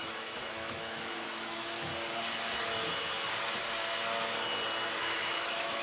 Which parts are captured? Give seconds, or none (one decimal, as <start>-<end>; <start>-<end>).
1.9-5.0